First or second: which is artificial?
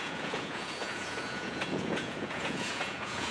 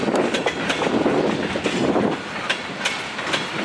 first